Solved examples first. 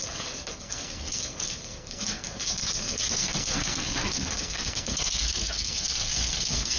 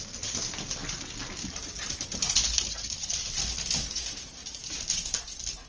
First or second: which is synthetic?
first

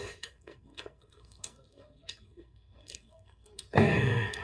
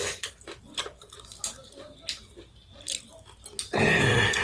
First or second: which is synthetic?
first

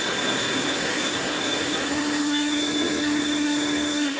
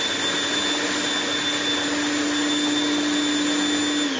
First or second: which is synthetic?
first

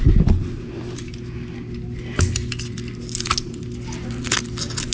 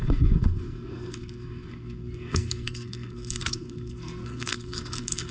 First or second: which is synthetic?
second